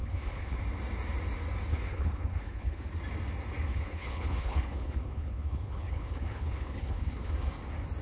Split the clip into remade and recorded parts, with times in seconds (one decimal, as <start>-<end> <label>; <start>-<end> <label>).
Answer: 0.0-0.6 remade; 0.6-1.7 recorded; 1.7-2.8 remade; 2.8-3.7 recorded; 3.7-7.3 remade; 7.3-8.0 recorded